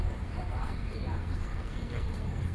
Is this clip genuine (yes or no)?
no